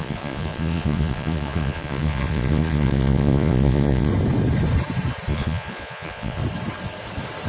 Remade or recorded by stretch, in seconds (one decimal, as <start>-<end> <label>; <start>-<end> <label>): 0.0-4.1 remade; 4.1-5.3 recorded; 5.3-6.4 remade; 6.4-7.5 recorded